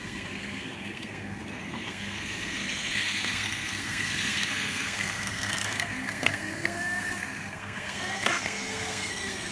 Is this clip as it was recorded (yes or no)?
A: no